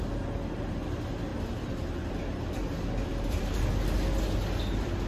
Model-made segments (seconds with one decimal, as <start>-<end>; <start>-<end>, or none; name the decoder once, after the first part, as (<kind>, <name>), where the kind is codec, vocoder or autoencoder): 3.1-3.7 (vocoder, BigVGAN v2)